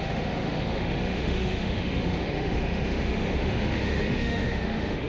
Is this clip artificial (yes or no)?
yes